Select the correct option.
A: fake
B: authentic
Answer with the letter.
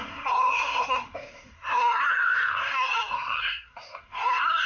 A